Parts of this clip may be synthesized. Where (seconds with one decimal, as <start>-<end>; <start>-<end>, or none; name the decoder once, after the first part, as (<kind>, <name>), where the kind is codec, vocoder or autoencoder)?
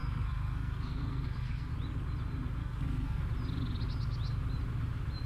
0.0-1.7 (codec, SNAC); 2.6-3.2